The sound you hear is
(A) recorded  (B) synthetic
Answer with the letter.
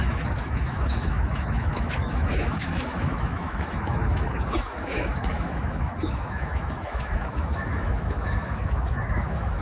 B